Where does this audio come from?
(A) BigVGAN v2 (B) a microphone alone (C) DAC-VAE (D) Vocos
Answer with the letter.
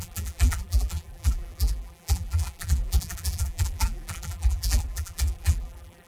A